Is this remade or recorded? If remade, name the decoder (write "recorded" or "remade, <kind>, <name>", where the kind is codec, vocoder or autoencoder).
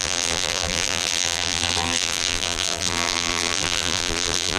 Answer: remade, vocoder, BigVGAN v2